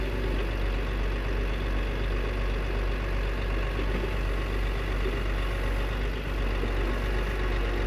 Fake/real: real